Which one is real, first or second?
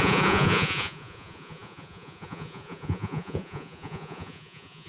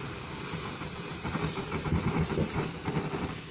second